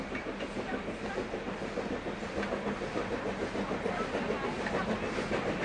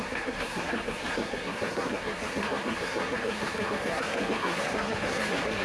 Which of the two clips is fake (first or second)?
second